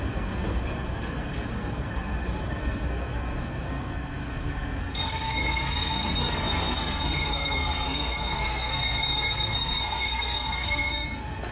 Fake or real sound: fake